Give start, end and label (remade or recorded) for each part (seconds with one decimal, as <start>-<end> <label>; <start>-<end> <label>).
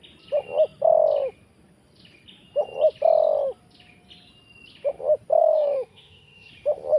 0.0-5.4 recorded; 5.4-6.5 remade; 6.5-7.0 recorded